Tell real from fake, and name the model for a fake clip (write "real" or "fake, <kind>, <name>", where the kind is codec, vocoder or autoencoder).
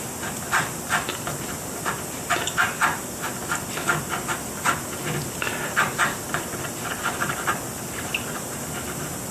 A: real